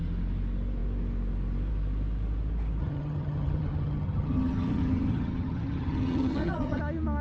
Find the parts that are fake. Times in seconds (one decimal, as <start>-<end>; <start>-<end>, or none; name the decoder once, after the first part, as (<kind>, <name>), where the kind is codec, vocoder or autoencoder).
2.8-6.8 (vocoder, HiFi-GAN)